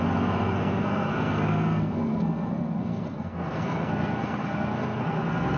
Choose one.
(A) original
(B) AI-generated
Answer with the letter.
B